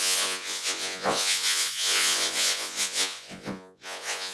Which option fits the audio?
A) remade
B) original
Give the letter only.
A